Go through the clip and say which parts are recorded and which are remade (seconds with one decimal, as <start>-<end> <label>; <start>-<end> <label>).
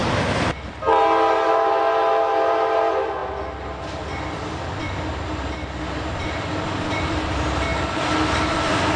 0.0-2.1 recorded; 2.1-9.0 remade